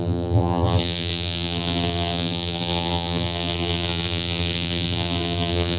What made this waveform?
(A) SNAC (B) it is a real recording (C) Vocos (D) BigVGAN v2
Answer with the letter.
D